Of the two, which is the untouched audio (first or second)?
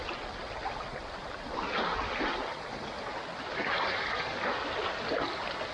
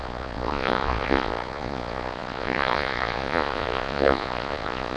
first